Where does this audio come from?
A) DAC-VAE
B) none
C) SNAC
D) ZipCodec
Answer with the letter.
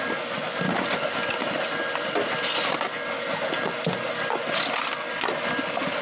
B